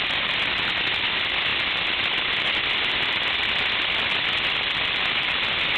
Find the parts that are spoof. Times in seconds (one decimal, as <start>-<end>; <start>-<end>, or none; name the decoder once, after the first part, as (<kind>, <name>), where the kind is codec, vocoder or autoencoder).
1.5-5.0 (vocoder, BigVGAN v2)